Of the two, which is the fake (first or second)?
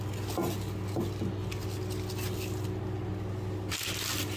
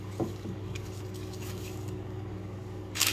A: second